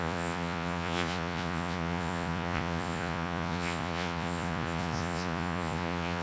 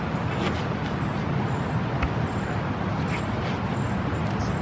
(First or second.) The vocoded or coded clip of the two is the first